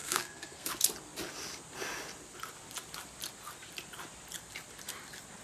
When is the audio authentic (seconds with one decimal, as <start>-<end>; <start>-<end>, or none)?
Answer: 0.7-5.4